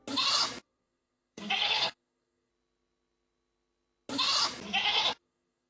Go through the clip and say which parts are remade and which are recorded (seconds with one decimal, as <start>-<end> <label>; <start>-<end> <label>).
0.0-0.6 recorded; 0.6-2.5 remade; 2.5-5.2 recorded; 5.2-5.7 remade